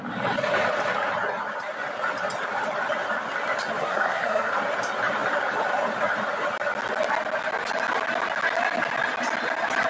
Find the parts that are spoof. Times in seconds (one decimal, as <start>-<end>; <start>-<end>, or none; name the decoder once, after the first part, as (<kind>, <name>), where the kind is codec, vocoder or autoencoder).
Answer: 3.8-4.5 (codec, SNAC)